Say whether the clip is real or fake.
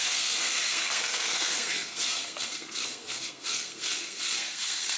fake